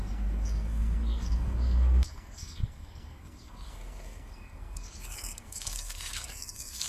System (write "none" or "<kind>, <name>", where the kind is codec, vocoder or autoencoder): codec, SNAC